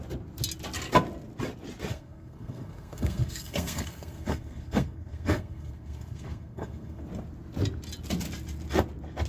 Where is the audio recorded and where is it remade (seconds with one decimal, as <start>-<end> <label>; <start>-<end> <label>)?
0.0-1.9 recorded; 1.9-7.0 remade; 7.0-9.3 recorded